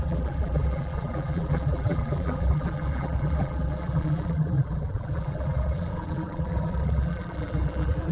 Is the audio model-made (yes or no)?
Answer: yes